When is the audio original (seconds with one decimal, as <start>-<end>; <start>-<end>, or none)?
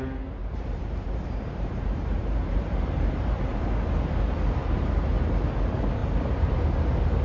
0.0-0.4; 3.7-4.6; 5.3-6.0; 6.6-7.2